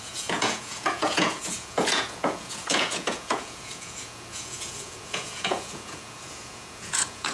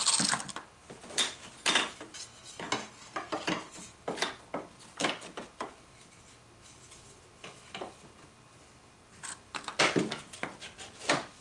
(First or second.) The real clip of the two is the second